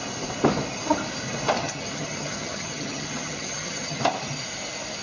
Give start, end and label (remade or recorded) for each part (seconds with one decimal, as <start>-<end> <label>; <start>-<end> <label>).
0.0-1.6 recorded; 1.6-4.0 remade; 4.0-5.0 recorded